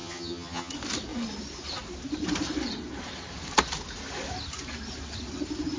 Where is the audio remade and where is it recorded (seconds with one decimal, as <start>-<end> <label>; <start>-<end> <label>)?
0.0-0.7 remade; 0.7-5.8 recorded

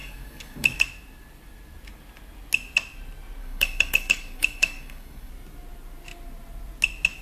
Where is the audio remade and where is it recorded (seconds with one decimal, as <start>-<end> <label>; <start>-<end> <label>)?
0.0-0.8 remade; 0.8-3.4 recorded; 3.4-5.3 remade; 5.3-7.2 recorded